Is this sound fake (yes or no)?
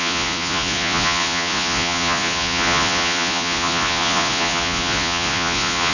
yes